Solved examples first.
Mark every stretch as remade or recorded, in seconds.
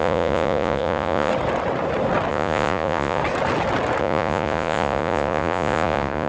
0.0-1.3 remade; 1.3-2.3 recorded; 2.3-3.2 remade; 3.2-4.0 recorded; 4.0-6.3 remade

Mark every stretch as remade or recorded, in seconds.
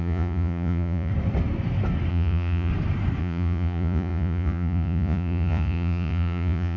0.0-1.1 remade; 1.1-2.1 recorded; 2.1-2.7 remade; 2.7-3.2 recorded; 3.2-6.8 remade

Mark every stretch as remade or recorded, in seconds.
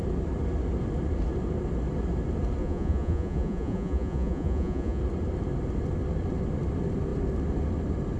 0.0-2.6 recorded; 2.6-5.0 remade; 5.0-8.2 recorded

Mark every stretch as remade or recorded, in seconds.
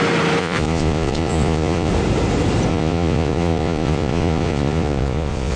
0.0-0.4 recorded; 0.4-1.9 remade; 1.9-2.7 recorded; 2.7-5.6 remade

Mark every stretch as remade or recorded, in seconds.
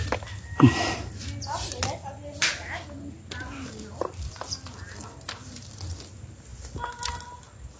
0.0-7.8 recorded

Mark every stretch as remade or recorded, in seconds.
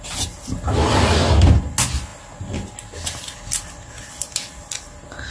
0.0-5.3 recorded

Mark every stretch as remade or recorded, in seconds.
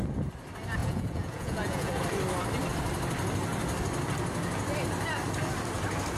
0.0-0.8 recorded; 0.8-2.0 remade; 2.0-6.2 recorded